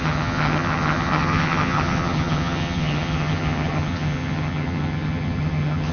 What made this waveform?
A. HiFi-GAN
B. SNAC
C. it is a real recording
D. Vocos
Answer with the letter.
A